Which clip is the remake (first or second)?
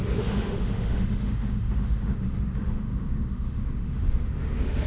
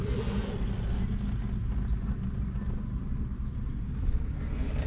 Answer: first